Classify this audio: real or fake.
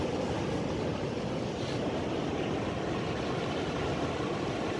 fake